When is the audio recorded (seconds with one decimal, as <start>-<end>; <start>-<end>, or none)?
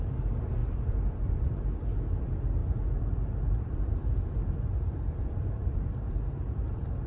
0.0-0.6; 1.7-2.6